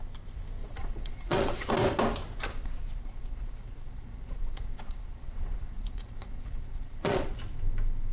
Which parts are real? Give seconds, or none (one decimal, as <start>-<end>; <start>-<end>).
0.0-0.6; 1.7-2.5; 7.4-8.1